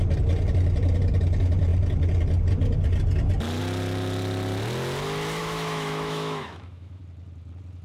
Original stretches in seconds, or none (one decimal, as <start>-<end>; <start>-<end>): 0.0-5.4; 7.0-7.8